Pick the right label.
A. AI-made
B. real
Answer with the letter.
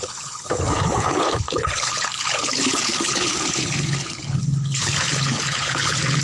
A